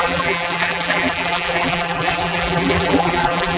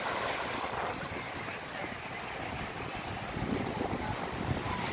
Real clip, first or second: second